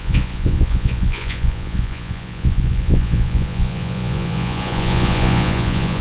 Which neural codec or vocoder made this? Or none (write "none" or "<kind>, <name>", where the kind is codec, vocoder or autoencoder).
vocoder, Vocos